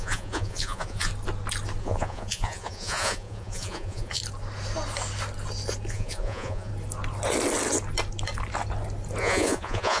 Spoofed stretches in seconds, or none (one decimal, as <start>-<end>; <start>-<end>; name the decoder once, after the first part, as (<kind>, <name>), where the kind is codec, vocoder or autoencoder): 0.0-1.1 (vocoder, Vocos); 1.8-4.2; 5.9-6.7; 9.2-10.0